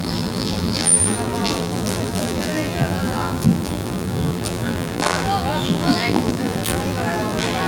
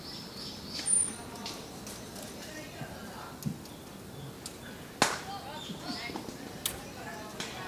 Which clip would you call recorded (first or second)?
second